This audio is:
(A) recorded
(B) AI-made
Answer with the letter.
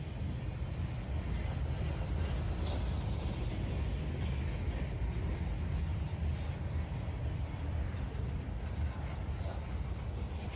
A